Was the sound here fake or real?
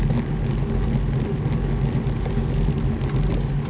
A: real